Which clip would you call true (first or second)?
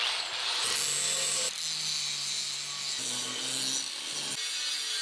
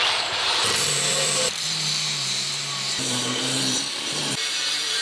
first